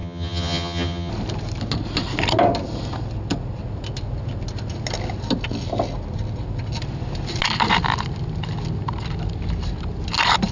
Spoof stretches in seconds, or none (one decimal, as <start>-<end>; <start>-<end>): 0.0-1.1